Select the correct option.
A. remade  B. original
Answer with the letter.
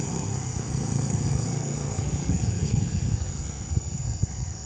A